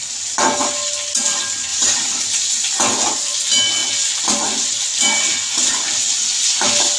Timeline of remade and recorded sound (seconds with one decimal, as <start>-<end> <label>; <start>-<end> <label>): 0.0-1.7 recorded; 1.7-2.8 remade; 2.8-7.0 recorded